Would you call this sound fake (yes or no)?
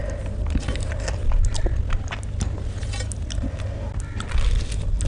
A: no